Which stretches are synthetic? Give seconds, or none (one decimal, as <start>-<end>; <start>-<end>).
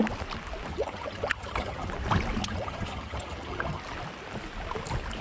0.7-1.9; 2.4-3.8